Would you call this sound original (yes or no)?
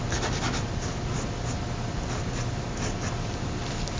yes